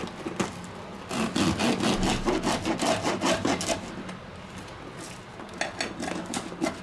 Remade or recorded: recorded